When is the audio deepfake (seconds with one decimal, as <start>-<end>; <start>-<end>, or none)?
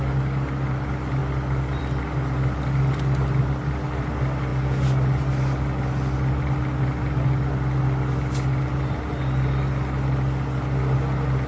none